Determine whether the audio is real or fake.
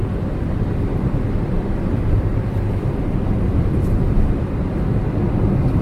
fake